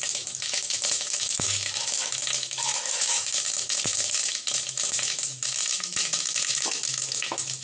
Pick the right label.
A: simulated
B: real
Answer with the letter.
A